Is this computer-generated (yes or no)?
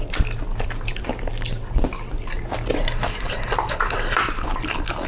no